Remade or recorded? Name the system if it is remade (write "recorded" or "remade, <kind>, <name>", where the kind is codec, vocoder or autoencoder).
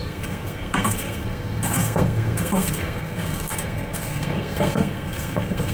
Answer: remade, codec, SNAC